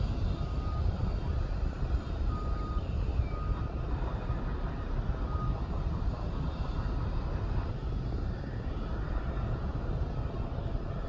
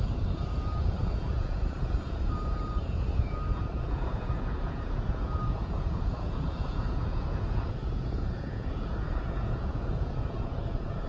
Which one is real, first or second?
first